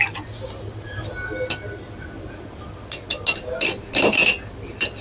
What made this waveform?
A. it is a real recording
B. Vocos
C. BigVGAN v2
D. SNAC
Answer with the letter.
A